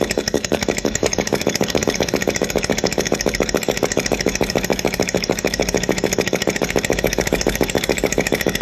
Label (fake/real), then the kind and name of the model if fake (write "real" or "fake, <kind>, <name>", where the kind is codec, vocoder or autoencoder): fake, codec, DAC